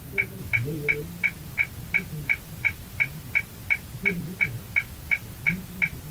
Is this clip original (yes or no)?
yes